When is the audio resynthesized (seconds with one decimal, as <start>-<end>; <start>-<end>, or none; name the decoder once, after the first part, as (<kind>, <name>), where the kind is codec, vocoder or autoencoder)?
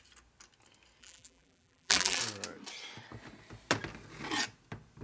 1.0-2.2 (vocoder, BigVGAN v2)